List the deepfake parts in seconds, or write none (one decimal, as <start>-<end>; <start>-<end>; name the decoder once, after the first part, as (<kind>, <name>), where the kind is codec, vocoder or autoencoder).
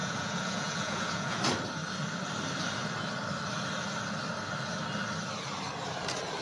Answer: 0.0-1.4 (vocoder, Vocos)